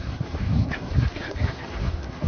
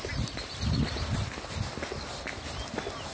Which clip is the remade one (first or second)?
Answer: first